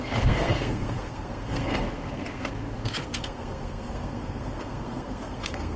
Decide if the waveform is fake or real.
fake